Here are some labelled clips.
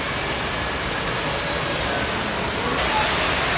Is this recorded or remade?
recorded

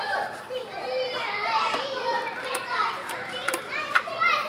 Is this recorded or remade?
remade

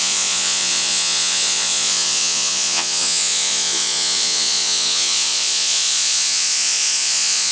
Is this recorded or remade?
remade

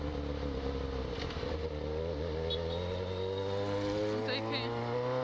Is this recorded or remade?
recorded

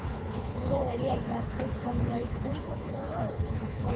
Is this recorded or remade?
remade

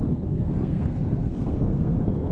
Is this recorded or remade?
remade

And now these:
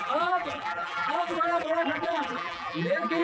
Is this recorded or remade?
remade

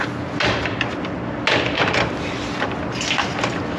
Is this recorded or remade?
recorded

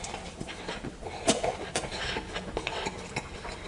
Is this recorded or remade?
recorded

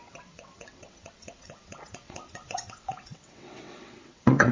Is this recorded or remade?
remade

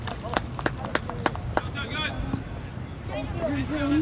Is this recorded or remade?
recorded